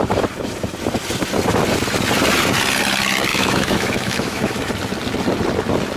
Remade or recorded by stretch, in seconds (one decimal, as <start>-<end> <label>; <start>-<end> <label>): 0.0-3.3 recorded; 3.3-4.7 remade; 4.7-6.0 recorded

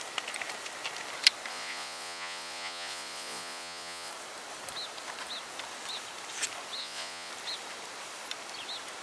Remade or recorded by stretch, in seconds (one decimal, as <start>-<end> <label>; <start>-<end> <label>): 0.0-1.5 recorded; 1.5-4.1 remade; 4.1-6.8 recorded; 6.8-7.3 remade; 7.3-9.0 recorded

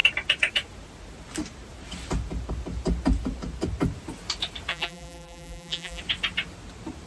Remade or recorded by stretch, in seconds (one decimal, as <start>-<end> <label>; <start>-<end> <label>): 0.0-4.7 recorded; 4.7-6.0 remade; 6.0-7.1 recorded

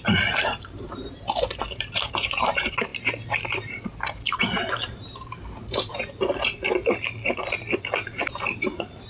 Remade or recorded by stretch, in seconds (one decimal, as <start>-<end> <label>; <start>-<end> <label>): 0.0-6.8 remade; 6.8-8.3 recorded; 8.3-9.1 remade

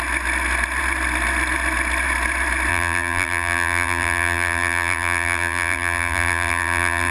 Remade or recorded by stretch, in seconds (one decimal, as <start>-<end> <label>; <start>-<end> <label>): 0.0-2.7 recorded; 2.7-7.1 remade

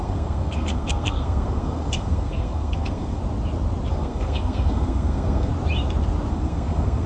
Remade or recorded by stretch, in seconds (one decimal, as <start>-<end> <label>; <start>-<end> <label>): 0.0-3.2 remade; 3.2-3.9 recorded; 3.9-5.5 remade; 5.5-6.3 recorded; 6.3-7.1 remade